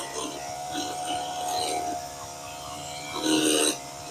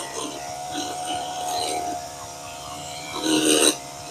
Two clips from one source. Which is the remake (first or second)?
second